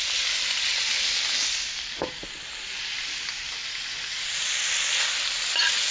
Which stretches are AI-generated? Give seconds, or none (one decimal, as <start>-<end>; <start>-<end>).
none

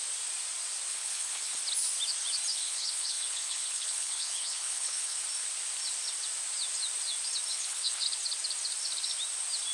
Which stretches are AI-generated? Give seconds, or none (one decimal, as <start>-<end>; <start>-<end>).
0.9-1.6; 2.5-5.2; 7.5-8.0

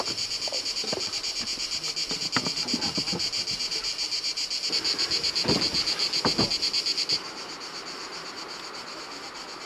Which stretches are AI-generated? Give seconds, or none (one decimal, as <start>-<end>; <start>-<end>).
none

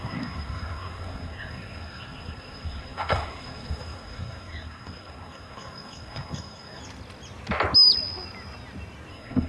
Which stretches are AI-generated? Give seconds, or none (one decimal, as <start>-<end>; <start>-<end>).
0.0-6.8; 9.1-9.5